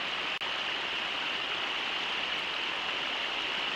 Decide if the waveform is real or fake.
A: real